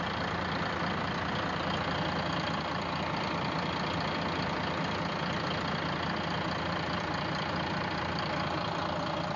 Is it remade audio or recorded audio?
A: recorded